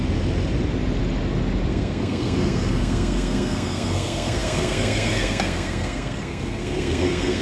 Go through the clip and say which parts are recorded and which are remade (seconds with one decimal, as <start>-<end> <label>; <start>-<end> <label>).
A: 0.0-1.7 recorded; 1.7-7.4 remade